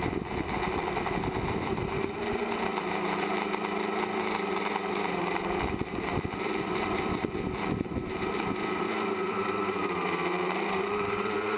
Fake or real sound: fake